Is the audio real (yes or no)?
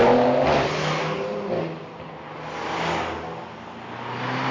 yes